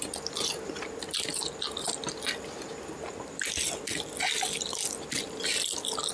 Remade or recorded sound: recorded